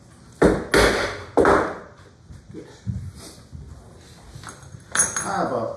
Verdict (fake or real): real